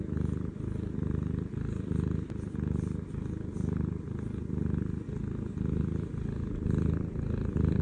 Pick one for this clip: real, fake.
real